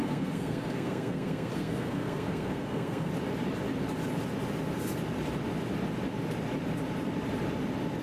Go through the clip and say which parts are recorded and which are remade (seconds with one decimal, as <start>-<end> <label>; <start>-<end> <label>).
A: 0.0-3.1 remade; 3.1-8.0 recorded